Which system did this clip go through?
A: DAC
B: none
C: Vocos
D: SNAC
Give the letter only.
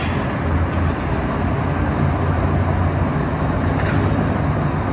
B